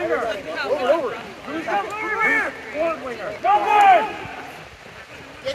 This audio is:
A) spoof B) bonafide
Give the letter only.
B